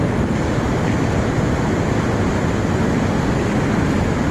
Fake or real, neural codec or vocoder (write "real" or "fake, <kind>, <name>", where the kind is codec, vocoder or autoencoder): real